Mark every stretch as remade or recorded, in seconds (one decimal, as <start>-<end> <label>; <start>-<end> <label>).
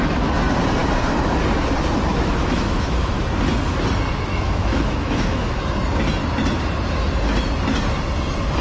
0.0-2.1 recorded; 2.1-3.2 remade; 3.2-4.3 recorded; 4.3-5.6 remade; 5.6-8.6 recorded